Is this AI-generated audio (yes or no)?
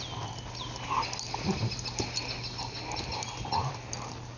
no